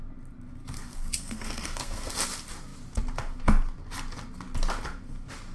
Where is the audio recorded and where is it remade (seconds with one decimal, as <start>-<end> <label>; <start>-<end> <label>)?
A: 0.0-0.9 recorded; 0.9-2.1 remade; 2.1-5.5 recorded